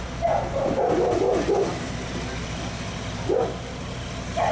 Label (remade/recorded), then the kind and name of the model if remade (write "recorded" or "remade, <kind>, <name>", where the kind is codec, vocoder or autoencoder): recorded